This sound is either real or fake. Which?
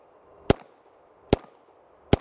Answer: real